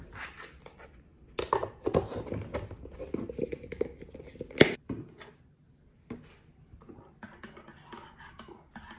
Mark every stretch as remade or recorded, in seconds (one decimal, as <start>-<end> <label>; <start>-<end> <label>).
0.0-9.0 recorded